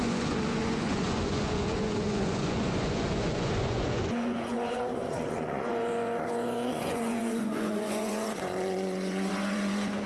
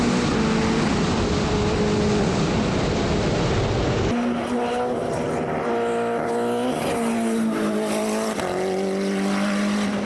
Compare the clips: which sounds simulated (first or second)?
first